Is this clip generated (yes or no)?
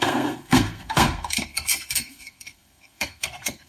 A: yes